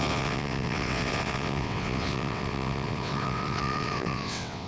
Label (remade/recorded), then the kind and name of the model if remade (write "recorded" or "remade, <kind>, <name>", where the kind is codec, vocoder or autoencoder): remade, vocoder, WaveNeXt